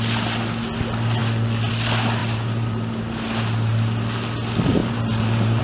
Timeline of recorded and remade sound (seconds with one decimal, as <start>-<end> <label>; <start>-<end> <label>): 0.0-2.2 recorded; 2.2-3.1 remade; 3.1-4.8 recorded; 4.8-5.6 remade